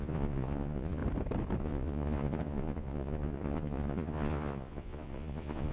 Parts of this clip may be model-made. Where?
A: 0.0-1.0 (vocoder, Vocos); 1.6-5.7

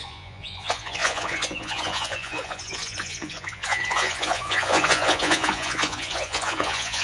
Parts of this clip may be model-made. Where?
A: 0.0-7.0 (vocoder, Vocos)